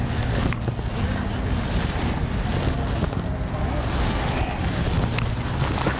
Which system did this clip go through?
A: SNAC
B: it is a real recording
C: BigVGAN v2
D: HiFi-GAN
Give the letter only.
B